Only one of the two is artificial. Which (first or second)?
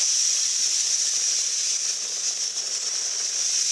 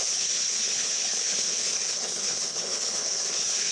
second